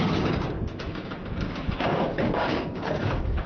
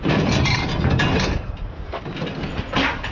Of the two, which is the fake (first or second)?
first